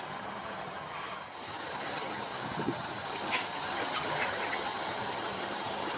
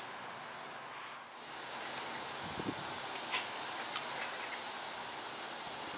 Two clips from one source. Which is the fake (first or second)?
first